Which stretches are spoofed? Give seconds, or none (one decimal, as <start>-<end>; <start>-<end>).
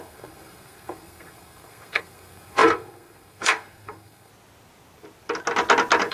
0.0-4.3